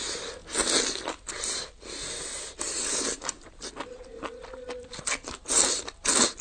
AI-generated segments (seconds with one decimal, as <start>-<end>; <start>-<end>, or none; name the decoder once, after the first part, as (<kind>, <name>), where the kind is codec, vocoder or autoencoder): none